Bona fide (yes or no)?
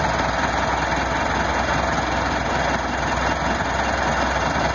yes